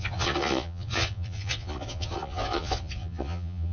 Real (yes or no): no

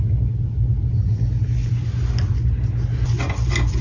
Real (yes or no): yes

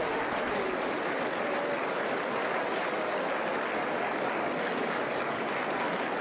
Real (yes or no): yes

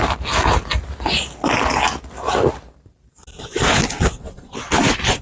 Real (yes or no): yes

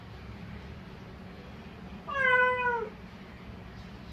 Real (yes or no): yes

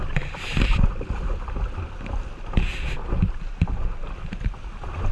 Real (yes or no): yes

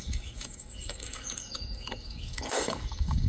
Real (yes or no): no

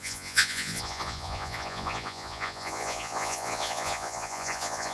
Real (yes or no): no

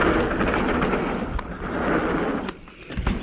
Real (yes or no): yes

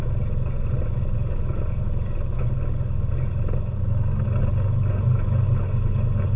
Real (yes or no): yes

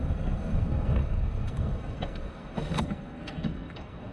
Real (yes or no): no